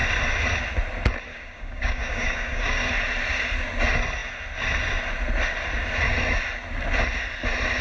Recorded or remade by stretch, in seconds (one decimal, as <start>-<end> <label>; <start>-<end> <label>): 0.0-1.3 recorded; 1.3-2.9 remade; 2.9-7.8 recorded